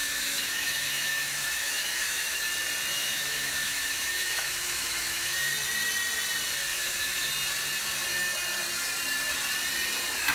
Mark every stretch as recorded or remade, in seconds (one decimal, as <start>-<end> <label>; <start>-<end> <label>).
0.0-2.4 remade; 2.4-2.9 recorded; 2.9-5.5 remade; 5.5-6.7 recorded; 6.7-7.3 remade; 7.3-10.3 recorded